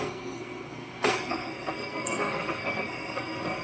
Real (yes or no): no